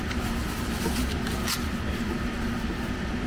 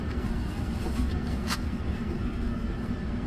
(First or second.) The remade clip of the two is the second